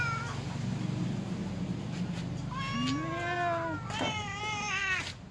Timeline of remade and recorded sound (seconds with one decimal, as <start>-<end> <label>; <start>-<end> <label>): 0.0-5.3 recorded